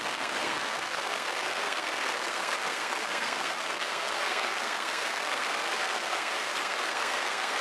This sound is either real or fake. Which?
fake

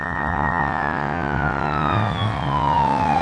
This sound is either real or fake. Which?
fake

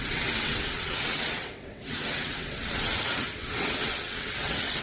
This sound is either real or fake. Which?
fake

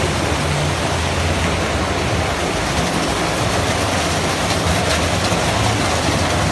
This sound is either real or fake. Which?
real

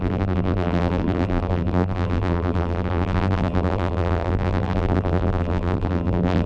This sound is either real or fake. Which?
fake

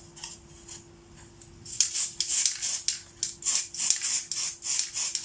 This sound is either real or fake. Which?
real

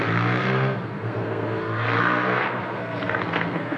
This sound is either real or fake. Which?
fake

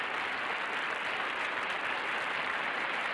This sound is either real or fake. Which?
real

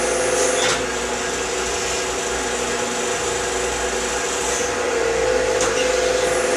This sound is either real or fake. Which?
real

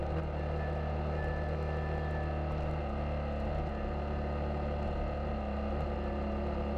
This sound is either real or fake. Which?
real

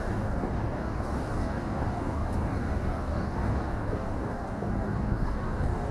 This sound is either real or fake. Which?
fake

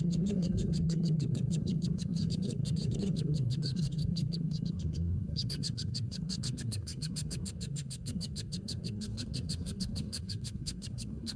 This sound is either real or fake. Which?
fake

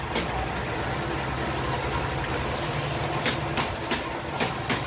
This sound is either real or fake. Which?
real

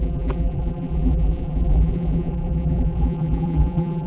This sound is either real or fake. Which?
fake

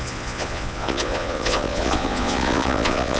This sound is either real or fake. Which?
fake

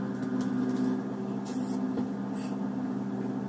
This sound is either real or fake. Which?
real